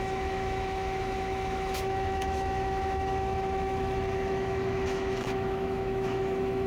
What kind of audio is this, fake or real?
fake